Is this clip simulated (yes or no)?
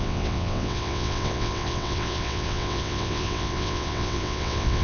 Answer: yes